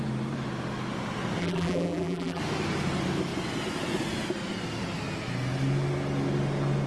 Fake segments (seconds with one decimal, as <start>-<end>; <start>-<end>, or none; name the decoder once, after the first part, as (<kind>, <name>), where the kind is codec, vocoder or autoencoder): 1.4-2.4 (vocoder, BigVGAN v2)